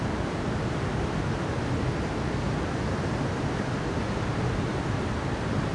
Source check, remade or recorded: recorded